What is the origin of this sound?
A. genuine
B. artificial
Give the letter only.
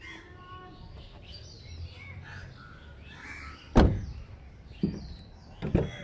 A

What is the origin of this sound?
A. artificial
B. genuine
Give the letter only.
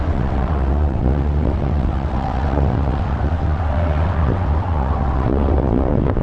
A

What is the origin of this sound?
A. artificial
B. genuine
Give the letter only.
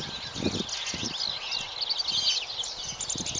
B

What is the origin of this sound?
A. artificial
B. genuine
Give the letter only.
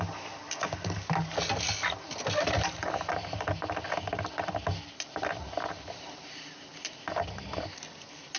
B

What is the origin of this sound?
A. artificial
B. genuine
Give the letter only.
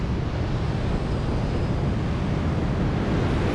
B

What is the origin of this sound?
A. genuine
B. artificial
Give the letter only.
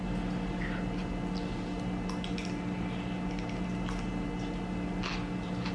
A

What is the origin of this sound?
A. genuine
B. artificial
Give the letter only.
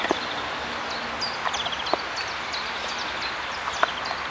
A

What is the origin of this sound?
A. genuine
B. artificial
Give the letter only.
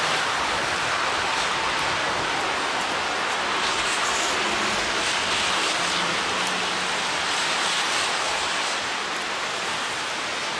A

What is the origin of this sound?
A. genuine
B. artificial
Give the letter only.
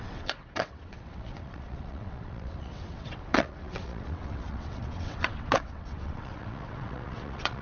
B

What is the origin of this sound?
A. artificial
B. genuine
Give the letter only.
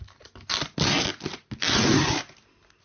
B